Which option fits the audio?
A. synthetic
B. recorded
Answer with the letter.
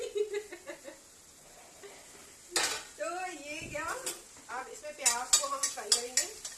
B